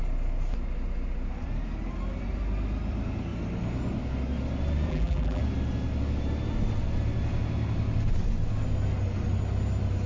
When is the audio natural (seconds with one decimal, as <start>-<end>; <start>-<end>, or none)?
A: 0.0-4.9; 5.4-10.1